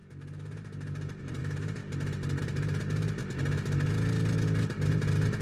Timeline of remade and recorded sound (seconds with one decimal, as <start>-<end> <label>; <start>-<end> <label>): 0.0-1.8 remade; 1.8-2.4 recorded; 2.4-3.2 remade; 3.2-4.9 recorded; 4.9-5.4 remade